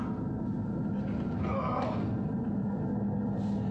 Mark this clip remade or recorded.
recorded